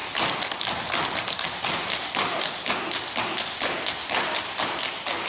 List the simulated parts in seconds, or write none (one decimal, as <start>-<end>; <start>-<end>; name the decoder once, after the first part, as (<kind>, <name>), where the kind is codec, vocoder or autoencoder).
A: none